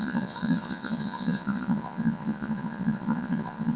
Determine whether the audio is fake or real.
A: fake